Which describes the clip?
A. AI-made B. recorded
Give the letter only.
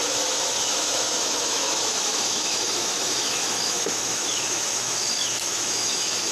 A